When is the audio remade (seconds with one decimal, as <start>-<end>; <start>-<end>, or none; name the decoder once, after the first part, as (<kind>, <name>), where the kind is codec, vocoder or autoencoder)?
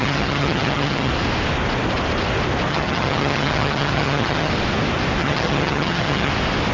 0.0-1.1 (vocoder, HiFi-GAN); 2.7-4.5; 5.2-6.3